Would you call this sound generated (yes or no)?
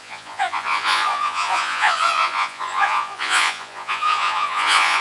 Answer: yes